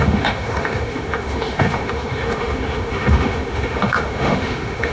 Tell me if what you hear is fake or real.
fake